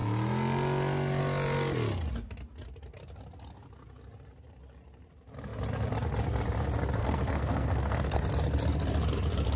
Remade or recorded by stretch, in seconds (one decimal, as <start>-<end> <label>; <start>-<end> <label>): 0.0-7.0 recorded; 7.0-8.2 remade; 8.2-9.6 recorded